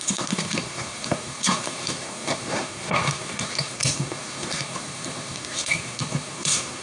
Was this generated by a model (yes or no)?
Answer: yes